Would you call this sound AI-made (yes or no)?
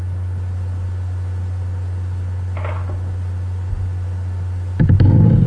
no